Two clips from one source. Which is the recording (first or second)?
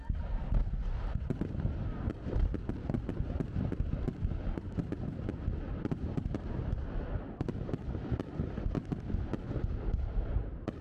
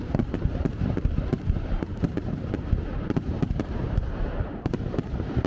first